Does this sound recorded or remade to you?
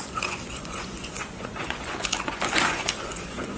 remade